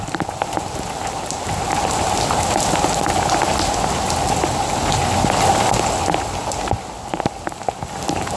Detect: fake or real real